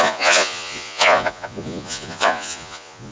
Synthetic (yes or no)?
yes